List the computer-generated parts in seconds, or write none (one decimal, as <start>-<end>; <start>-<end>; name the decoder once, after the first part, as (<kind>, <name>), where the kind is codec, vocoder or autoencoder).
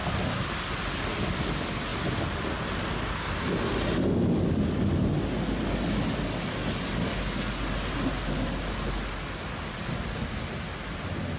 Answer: none